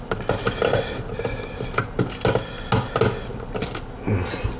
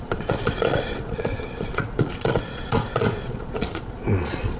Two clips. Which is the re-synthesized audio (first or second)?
second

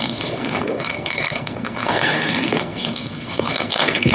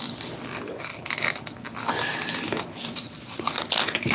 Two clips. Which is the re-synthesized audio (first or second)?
first